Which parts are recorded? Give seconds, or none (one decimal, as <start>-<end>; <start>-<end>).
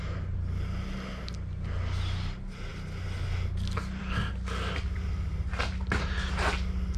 0.0-7.0